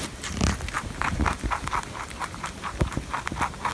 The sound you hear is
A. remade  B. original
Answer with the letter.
B